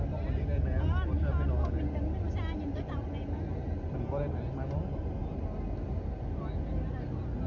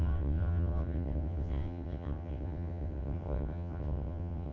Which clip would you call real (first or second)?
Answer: first